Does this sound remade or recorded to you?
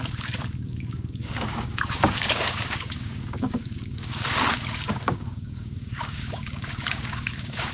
remade